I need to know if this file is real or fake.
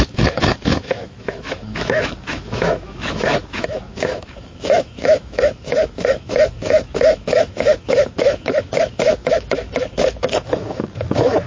fake